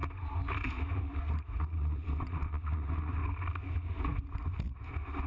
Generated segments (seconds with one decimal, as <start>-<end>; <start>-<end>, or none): 1.6-3.2